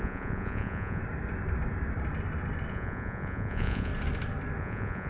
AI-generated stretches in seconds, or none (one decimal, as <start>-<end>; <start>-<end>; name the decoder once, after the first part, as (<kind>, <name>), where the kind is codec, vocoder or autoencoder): 0.0-1.0 (vocoder, Vocos); 2.7-3.9; 4.6-5.1